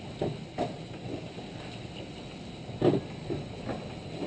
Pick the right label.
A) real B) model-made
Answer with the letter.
A